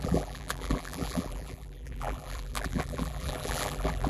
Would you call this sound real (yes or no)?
no